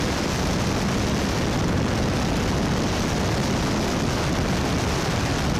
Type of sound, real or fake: real